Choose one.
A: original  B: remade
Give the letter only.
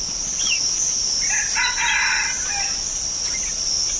A